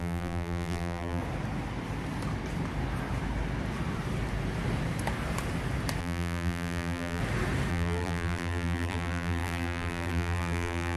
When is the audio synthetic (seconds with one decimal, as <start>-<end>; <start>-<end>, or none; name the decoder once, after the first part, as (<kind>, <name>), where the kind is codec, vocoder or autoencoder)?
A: 0.0-1.2 (vocoder, BigVGAN v2); 6.0-7.2; 7.7-11.0